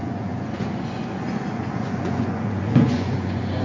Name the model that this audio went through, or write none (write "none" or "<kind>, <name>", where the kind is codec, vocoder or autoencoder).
vocoder, Vocos